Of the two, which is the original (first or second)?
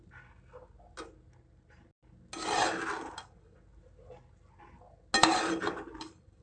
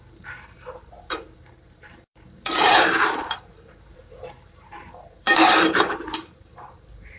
first